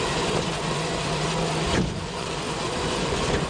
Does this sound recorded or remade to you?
remade